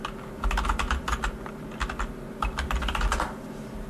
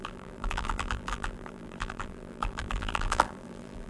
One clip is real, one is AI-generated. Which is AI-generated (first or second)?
second